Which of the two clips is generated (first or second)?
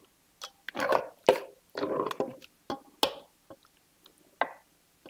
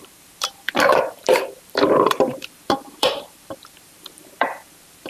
second